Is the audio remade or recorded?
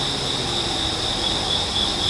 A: recorded